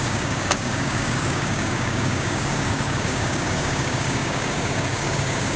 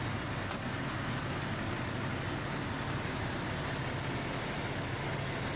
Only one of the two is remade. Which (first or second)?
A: first